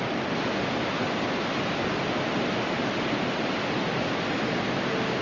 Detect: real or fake real